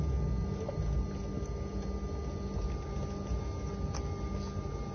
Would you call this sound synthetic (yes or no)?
no